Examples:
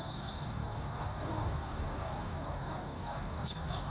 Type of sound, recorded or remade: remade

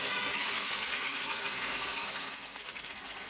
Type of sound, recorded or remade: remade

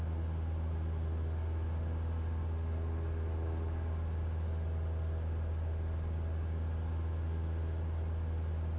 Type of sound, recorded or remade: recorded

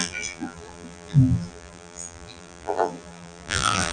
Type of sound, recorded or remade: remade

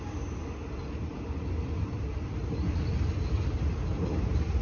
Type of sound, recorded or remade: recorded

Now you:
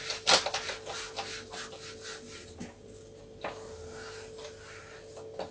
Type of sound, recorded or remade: recorded